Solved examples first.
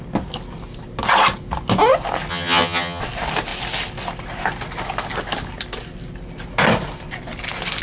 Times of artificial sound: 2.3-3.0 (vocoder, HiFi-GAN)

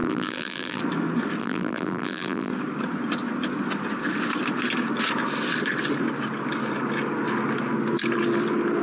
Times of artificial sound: 0.0-0.8 (vocoder, BigVGAN v2); 1.4-2.5